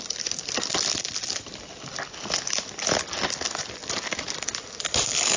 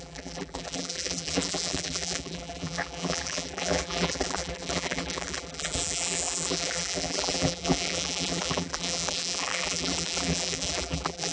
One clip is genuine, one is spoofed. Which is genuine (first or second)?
first